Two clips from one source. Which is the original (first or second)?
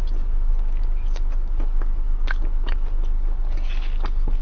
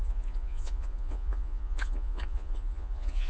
first